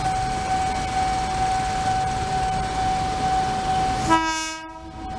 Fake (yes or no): no